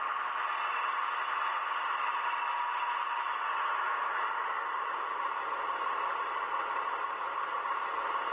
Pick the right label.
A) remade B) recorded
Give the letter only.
B